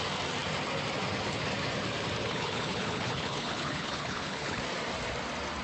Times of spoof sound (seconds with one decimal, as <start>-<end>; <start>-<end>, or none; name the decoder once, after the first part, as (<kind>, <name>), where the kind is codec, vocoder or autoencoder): 2.2-4.6 (codec, HILCodec)